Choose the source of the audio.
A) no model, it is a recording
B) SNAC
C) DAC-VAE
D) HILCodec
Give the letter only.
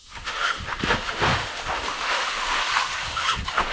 C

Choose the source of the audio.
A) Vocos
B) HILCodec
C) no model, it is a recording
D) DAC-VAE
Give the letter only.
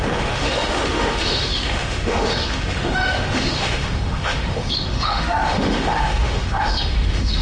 D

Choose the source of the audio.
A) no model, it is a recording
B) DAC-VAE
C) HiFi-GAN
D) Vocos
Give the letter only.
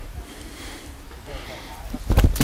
A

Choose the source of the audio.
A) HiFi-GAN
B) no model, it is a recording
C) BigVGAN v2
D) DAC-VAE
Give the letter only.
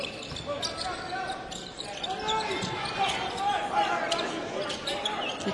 B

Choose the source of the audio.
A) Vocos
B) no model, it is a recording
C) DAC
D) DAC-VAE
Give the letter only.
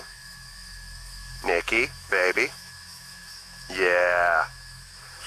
D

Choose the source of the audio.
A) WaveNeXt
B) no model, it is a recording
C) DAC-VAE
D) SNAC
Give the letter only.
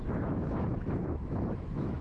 C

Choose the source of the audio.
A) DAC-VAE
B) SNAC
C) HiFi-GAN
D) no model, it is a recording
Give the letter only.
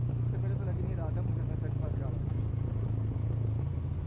D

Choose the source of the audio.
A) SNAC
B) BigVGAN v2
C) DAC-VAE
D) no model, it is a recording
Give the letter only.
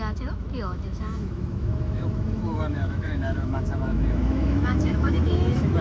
C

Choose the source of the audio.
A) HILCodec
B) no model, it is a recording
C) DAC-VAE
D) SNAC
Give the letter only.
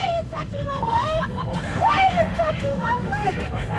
C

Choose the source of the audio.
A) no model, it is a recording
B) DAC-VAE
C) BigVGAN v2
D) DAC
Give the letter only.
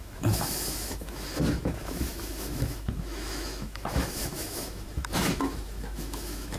B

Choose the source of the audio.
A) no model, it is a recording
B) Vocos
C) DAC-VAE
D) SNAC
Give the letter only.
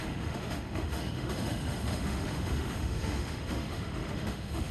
C